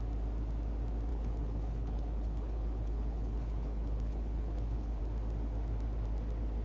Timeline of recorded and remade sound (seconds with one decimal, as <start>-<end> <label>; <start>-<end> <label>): 0.0-1.1 recorded; 1.1-5.0 remade; 5.0-6.6 recorded